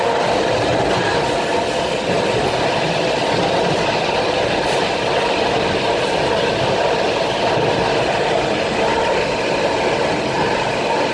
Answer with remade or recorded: recorded